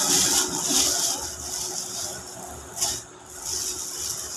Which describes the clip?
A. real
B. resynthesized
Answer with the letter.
A